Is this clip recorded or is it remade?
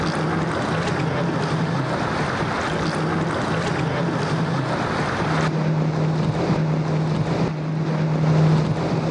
recorded